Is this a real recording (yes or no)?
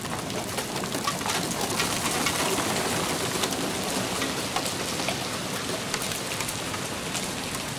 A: yes